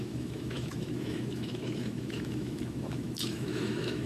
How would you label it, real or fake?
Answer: fake